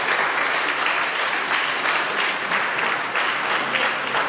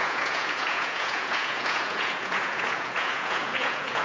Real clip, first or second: first